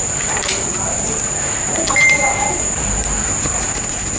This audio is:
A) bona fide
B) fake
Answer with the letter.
B